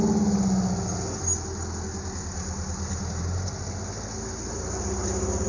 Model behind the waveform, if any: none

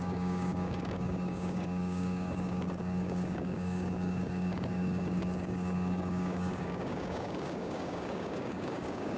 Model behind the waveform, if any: codec, DAC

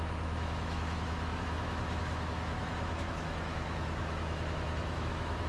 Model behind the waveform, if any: autoencoder, DAC-VAE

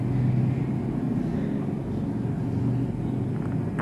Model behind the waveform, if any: none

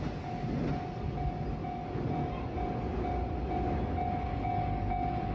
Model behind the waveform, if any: none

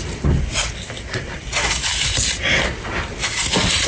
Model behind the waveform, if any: none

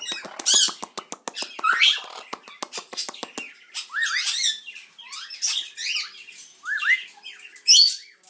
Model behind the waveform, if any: none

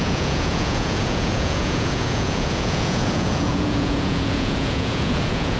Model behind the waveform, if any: vocoder, Vocos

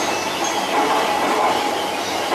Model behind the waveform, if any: none